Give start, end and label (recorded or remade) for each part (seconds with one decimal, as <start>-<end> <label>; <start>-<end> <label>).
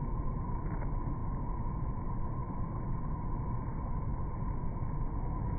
0.0-5.6 recorded